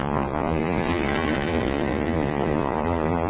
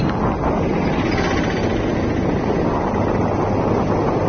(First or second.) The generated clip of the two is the first